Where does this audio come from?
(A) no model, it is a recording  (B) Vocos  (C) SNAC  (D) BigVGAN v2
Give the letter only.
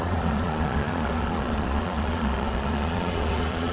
B